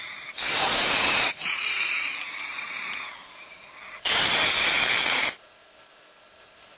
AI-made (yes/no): no